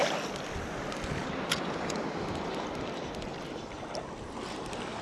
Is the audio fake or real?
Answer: real